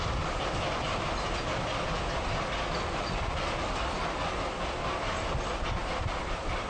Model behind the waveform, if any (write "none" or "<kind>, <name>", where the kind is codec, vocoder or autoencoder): none